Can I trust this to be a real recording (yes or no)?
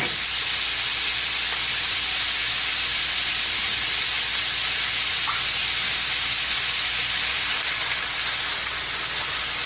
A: yes